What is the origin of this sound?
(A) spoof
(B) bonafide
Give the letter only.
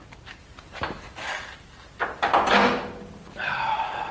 B